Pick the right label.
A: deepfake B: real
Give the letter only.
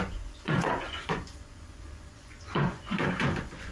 A